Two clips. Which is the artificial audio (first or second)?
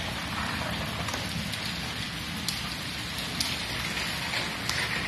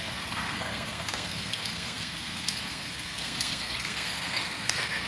second